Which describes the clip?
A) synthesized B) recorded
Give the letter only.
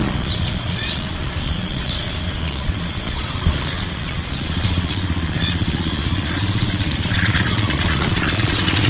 A